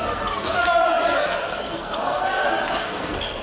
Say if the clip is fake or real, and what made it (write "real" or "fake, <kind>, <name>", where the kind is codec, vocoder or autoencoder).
fake, codec, SNAC